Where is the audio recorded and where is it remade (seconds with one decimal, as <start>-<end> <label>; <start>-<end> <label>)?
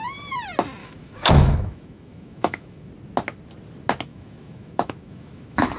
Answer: 0.0-0.8 recorded; 0.8-2.9 remade; 2.9-4.1 recorded; 4.1-5.8 remade